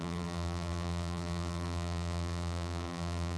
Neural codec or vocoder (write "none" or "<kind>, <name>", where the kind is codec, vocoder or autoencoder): vocoder, BigVGAN v2